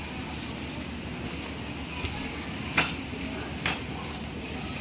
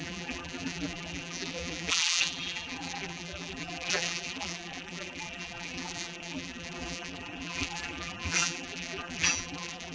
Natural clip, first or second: first